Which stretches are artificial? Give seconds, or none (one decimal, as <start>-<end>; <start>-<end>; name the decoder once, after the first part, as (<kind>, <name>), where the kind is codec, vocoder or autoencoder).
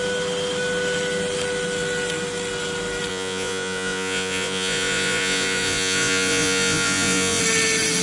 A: 3.1-7.4 (vocoder, Vocos)